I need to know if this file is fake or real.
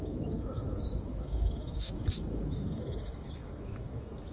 fake